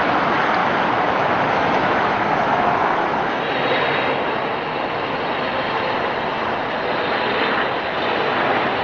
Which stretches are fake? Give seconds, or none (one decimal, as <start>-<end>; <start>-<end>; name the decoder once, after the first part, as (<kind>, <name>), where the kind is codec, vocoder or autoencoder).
0.6-3.4 (autoencoder, DAC-VAE)